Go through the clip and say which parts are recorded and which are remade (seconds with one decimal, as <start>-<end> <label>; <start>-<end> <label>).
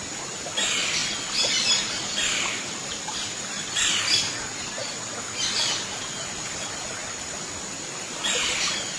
0.0-1.0 recorded; 1.0-4.3 remade; 4.3-4.8 recorded; 4.8-6.5 remade; 6.5-7.0 recorded; 7.0-7.9 remade; 7.9-9.0 recorded